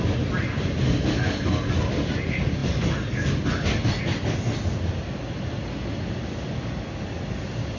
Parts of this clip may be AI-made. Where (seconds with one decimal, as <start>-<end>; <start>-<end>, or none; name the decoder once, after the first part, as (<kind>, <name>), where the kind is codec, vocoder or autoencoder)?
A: none